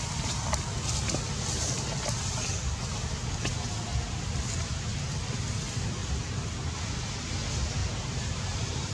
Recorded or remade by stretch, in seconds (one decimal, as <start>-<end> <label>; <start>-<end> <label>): 0.0-7.8 recorded; 7.8-8.9 remade